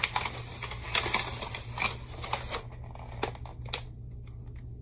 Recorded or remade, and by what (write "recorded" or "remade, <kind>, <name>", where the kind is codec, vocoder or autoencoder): recorded